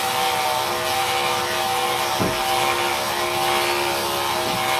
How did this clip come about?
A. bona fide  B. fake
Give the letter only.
A